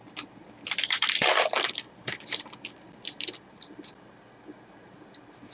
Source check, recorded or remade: recorded